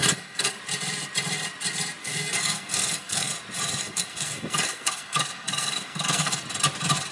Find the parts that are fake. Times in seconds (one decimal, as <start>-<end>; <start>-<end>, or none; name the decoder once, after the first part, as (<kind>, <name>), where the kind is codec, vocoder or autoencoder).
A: 0.0-0.5 (codec, SNAC); 2.0-3.3; 3.8-6.4